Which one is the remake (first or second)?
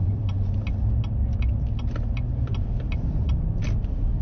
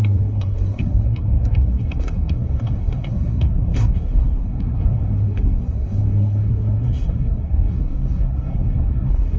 second